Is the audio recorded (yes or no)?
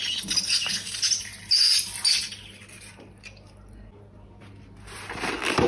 yes